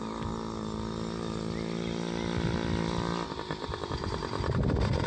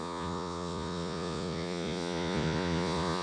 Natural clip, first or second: first